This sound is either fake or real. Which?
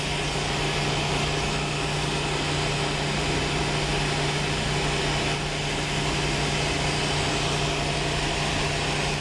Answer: real